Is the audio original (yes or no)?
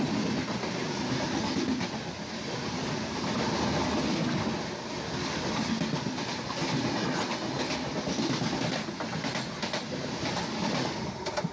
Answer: yes